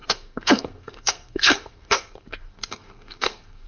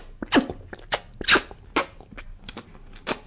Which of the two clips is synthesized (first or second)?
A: first